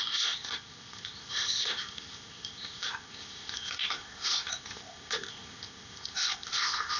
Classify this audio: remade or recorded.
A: remade